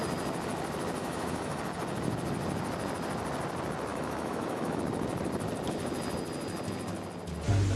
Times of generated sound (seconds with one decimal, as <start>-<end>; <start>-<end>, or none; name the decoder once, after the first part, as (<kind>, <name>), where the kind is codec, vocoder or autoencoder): 1.0-1.6 (autoencoder, DAC-VAE); 3.9-4.8